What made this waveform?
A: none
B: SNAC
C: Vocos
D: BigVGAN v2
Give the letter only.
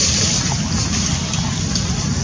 A